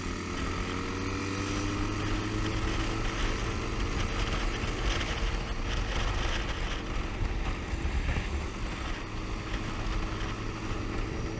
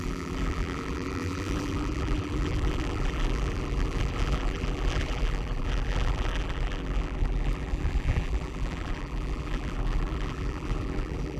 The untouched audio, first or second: first